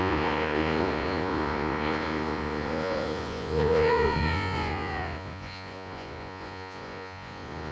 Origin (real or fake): fake